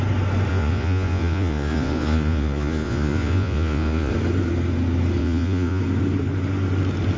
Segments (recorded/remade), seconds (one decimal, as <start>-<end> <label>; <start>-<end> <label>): 0.0-0.5 recorded; 0.5-4.1 remade; 4.1-5.2 recorded; 5.2-5.8 remade; 5.8-7.2 recorded